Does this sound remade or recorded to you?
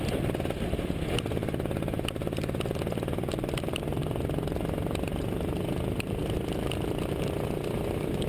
recorded